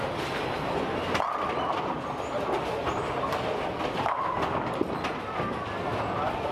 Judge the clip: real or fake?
real